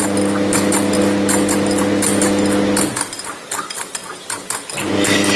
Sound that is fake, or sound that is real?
real